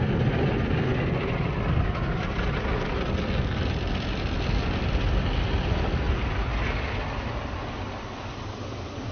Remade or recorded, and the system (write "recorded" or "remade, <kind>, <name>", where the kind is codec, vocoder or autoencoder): recorded